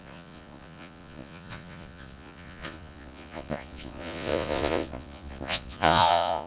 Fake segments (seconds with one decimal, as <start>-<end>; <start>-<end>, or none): 0.0-6.5